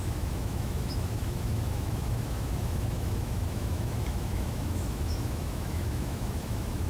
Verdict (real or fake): fake